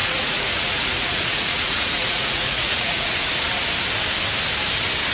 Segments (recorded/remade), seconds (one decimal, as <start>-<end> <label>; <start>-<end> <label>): 0.0-3.1 remade; 3.1-5.1 recorded